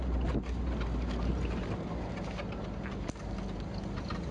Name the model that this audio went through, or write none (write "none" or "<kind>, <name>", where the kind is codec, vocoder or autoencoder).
none